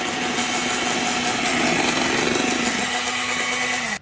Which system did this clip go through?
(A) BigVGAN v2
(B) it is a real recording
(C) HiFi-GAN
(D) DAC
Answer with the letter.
B